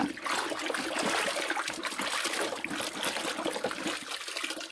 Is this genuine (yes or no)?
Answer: yes